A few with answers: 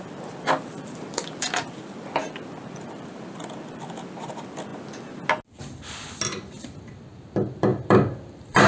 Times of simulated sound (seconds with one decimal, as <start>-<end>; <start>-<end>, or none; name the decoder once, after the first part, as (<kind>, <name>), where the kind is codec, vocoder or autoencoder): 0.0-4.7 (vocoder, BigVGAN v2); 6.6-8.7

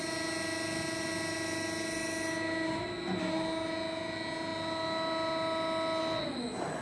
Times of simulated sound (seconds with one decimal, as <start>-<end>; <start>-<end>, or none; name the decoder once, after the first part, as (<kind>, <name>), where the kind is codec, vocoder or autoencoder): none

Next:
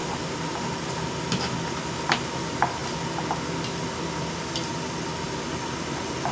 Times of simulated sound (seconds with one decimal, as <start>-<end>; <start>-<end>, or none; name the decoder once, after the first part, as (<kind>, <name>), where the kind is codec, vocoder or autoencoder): none

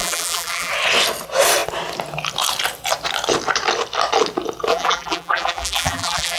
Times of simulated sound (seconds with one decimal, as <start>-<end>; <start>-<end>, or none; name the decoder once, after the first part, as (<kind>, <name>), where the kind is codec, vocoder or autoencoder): 0.0-0.7 (vocoder, BigVGAN v2); 4.7-6.4

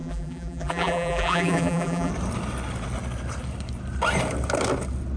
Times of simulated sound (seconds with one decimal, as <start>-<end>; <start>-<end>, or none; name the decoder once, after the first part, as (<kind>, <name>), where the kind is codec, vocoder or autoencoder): 0.0-2.1 (vocoder, BigVGAN v2)

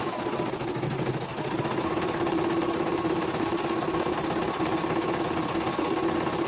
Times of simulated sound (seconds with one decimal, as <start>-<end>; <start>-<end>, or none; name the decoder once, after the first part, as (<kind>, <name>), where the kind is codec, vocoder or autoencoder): 1.3-5.2 (vocoder, BigVGAN v2)